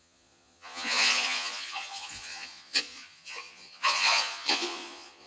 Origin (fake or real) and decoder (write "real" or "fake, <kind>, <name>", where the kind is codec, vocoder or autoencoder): fake, vocoder, Vocos